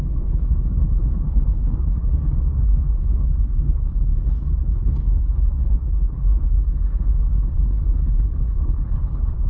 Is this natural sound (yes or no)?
no